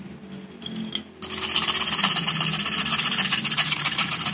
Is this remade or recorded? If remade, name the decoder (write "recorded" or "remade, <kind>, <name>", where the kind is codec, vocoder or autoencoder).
recorded